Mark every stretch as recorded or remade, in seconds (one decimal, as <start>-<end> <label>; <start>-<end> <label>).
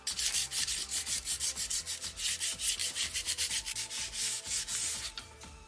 0.0-2.8 recorded; 2.8-3.5 remade; 3.5-4.5 recorded; 4.5-5.7 remade